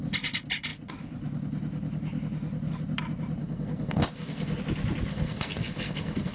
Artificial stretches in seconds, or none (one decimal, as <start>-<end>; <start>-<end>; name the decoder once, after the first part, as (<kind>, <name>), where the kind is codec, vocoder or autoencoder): 3.4-4.6 (codec, SNAC); 5.1-6.3